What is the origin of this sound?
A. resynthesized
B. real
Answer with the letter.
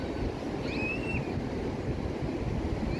B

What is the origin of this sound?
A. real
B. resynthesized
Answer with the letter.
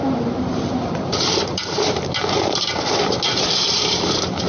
B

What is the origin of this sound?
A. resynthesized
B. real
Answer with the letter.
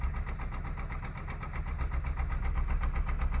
B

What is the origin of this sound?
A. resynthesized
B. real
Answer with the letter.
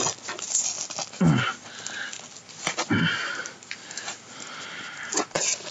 B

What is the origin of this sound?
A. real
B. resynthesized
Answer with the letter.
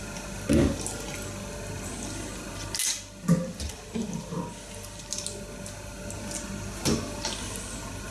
A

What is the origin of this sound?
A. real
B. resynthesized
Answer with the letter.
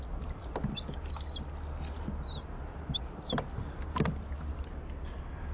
A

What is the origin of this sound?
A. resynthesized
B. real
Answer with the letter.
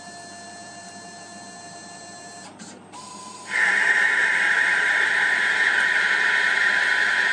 A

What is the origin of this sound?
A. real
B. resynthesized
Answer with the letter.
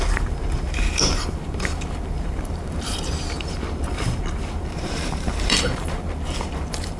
B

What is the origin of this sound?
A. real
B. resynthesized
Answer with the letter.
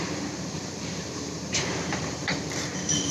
B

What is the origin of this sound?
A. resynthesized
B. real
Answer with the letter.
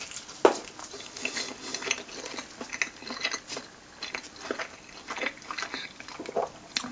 B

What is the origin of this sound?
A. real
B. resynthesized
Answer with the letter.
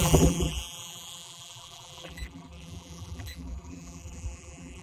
B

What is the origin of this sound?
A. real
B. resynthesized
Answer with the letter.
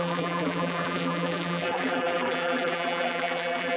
B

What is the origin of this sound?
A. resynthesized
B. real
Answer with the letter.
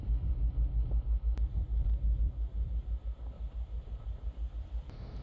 A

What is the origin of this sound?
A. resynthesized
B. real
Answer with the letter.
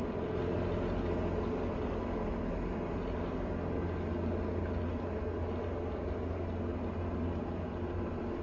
B